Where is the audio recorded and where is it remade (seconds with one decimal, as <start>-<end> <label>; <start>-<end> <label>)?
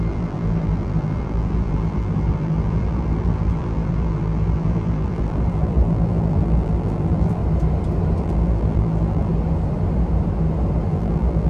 0.0-7.4 remade; 7.4-8.2 recorded; 8.2-9.3 remade; 9.3-10.9 recorded; 10.9-11.5 remade